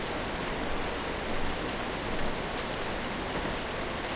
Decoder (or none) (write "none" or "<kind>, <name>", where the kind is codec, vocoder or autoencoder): none